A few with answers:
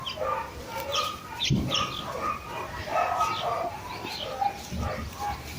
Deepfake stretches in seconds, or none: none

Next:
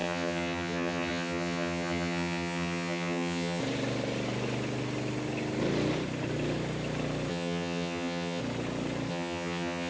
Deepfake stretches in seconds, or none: 0.0-3.6 (vocoder, HiFi-GAN); 7.3-8.4; 9.1-9.9

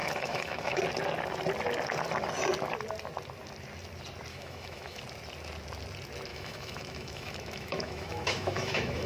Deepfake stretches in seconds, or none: 0.0-0.8 (autoencoder, DAC-VAE); 4.3-5.0; 6.3-9.1

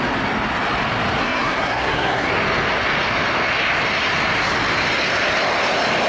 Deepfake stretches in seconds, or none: 1.2-2.3 (codec, SNAC)

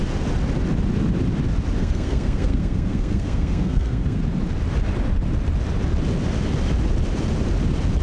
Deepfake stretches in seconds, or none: 1.8-4.2 (codec, SNAC)

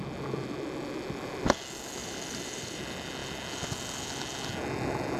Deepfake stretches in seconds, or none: 2.0-2.8 (vocoder, BigVGAN v2)